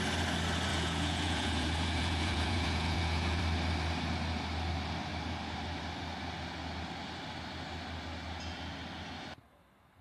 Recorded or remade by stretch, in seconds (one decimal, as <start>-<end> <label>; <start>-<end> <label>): 0.0-0.7 recorded; 0.7-3.4 remade; 3.4-10.0 recorded